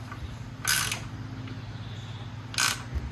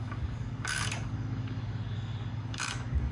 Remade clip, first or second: second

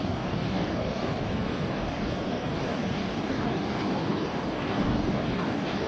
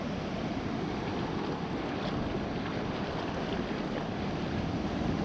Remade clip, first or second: first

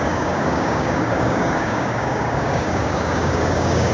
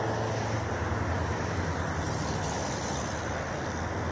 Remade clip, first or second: first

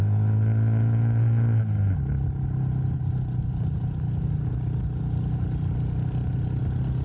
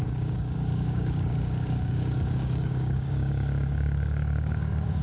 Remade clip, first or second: second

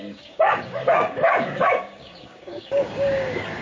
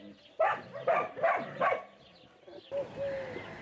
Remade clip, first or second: first